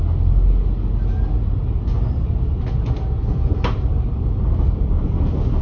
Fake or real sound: real